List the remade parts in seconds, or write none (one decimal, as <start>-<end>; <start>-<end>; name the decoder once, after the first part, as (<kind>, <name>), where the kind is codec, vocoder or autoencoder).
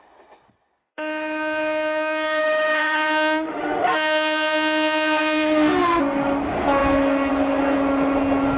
0.8-6.0 (autoencoder, DAC-VAE)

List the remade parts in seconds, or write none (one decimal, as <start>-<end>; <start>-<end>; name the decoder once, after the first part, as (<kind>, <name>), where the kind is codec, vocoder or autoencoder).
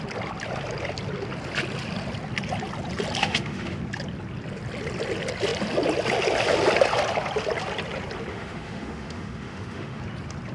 3.2-3.8 (autoencoder, DAC-VAE); 8.3-10.0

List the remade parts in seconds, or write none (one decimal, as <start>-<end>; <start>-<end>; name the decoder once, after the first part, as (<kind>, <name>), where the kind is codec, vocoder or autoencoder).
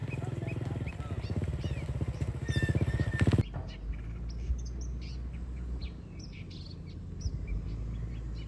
none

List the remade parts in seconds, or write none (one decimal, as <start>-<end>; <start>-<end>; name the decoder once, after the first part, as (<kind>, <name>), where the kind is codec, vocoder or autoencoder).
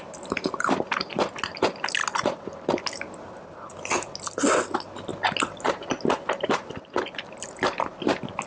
none